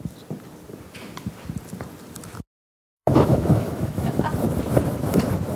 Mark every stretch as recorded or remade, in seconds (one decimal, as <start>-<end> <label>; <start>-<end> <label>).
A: 0.0-2.8 recorded; 2.8-4.2 remade; 4.2-5.5 recorded